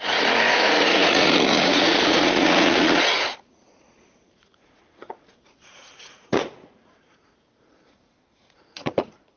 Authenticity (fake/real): fake